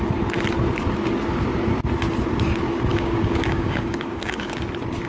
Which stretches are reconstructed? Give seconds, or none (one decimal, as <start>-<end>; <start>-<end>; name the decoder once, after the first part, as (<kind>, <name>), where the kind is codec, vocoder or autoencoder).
2.9-4.6 (codec, DAC)